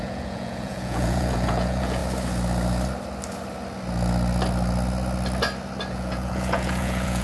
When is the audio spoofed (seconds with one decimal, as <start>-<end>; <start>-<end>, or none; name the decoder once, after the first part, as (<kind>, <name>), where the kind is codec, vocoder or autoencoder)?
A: 0.0-2.0 (vocoder, Vocos); 5.9-7.2